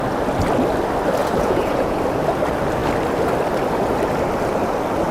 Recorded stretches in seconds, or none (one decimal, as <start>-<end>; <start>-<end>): 0.0-1.2; 2.0-5.1